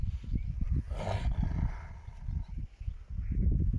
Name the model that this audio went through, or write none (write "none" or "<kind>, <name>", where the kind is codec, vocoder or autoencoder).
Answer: none